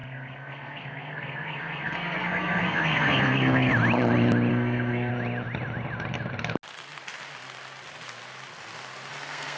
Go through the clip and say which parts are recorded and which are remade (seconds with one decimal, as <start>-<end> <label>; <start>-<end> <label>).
0.0-3.7 remade; 3.7-4.5 recorded; 4.5-5.1 remade; 5.1-9.1 recorded; 9.1-9.6 remade